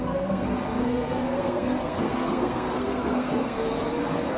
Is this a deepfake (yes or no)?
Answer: yes